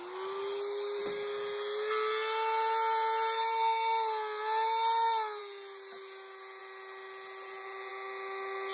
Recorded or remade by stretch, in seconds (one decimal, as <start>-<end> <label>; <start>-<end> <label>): 0.0-8.7 recorded